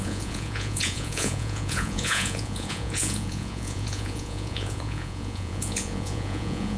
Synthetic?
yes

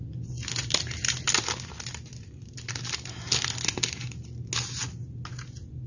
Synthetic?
no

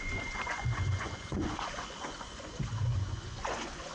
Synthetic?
yes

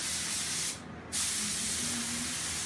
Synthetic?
no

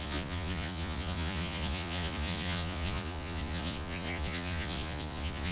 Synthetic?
yes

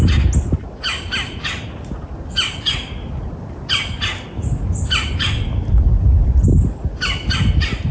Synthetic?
no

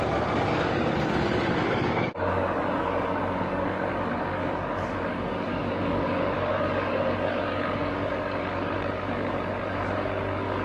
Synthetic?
yes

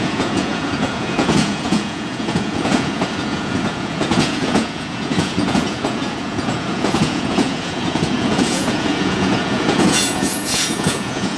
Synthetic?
yes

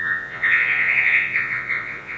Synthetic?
yes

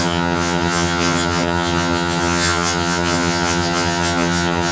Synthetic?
yes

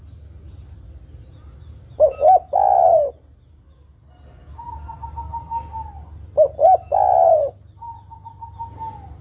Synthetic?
no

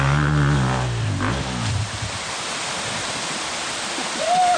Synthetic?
no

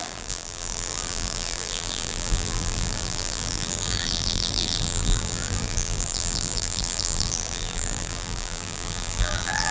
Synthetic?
yes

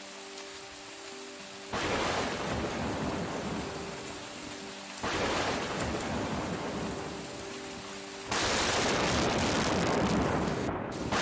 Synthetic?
no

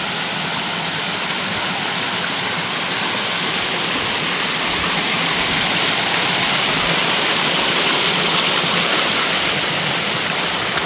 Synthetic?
no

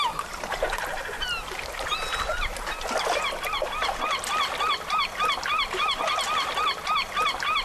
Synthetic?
no